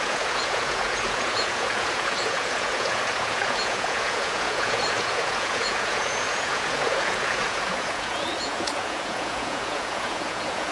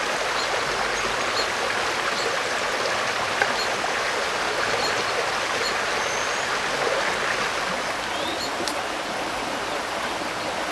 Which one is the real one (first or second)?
second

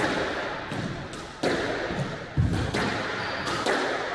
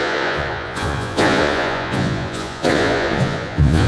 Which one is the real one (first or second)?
first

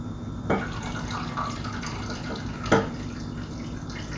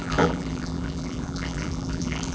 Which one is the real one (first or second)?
first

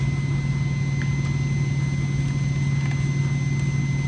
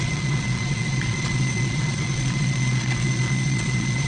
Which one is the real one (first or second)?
first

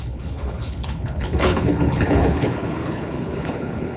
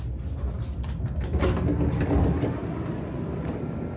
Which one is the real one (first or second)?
second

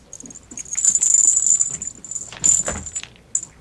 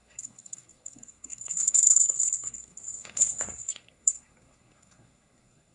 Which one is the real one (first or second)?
first